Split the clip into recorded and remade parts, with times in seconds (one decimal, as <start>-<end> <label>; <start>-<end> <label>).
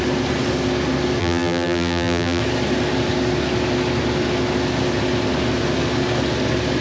0.0-1.2 recorded; 1.2-2.4 remade; 2.4-6.8 recorded